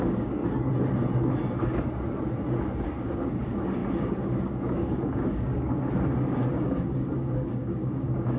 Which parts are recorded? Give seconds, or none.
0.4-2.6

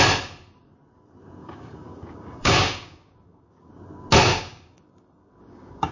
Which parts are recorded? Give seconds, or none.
0.0-1.4; 3.7-4.3

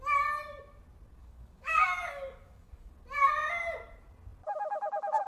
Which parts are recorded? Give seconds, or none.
0.0-1.2; 2.9-5.3

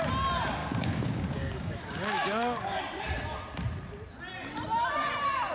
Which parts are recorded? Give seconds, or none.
0.0-0.6; 2.8-5.5